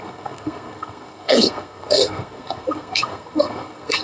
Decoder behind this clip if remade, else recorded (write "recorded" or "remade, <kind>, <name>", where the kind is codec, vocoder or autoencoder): remade, codec, SNAC